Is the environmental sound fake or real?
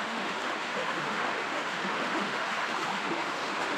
fake